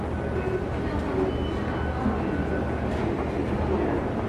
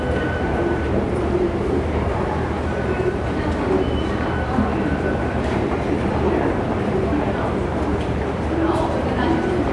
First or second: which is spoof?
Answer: second